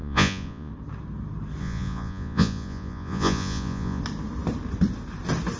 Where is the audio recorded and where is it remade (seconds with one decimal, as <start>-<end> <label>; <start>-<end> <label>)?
0.0-0.7 remade; 0.7-1.6 recorded; 1.6-4.0 remade; 4.0-5.6 recorded